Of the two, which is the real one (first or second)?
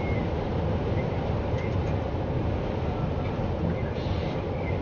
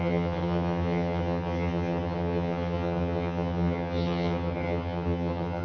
first